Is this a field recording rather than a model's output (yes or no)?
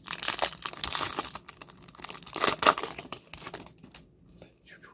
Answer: yes